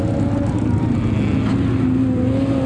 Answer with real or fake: real